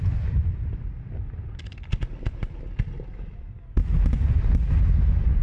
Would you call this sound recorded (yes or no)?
yes